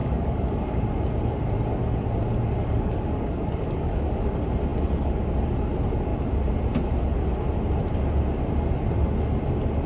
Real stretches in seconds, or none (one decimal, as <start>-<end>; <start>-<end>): 0.8-2.6; 4.1-9.9